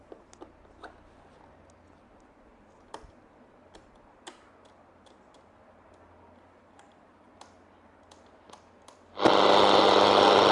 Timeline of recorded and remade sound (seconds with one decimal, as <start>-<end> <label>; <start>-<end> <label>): 0.0-10.5 recorded